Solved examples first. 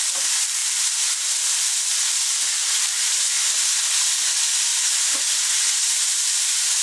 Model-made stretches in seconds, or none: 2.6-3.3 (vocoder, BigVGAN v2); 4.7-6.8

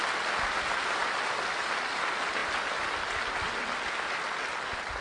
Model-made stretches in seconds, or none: none

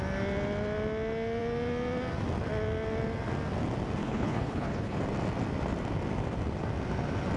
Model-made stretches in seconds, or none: 4.0-5.0 (codec, HILCodec)